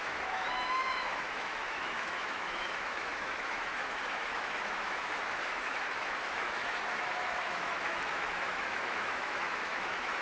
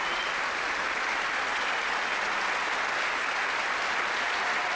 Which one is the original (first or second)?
second